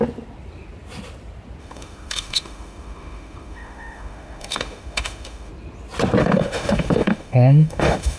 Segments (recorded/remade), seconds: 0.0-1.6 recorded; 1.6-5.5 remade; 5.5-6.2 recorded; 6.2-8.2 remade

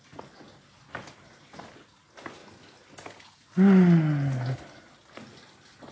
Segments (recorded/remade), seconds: 0.0-5.9 recorded

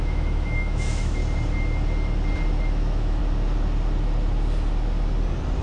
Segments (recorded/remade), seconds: 0.0-1.2 remade; 1.2-2.7 recorded; 2.7-3.2 remade; 3.2-5.6 recorded

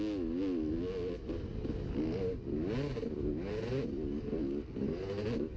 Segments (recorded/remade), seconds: 0.0-5.6 recorded

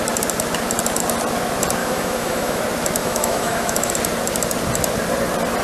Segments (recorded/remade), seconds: 0.0-1.8 recorded; 1.8-2.6 remade; 2.6-3.0 recorded; 3.0-3.9 remade; 3.9-5.6 recorded